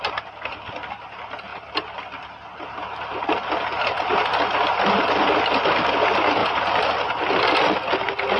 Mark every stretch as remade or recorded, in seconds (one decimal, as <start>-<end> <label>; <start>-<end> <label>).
0.0-8.4 recorded